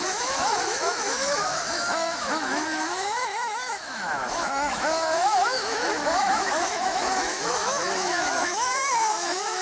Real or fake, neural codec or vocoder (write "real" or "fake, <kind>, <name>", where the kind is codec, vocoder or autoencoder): fake, autoencoder, DAC-VAE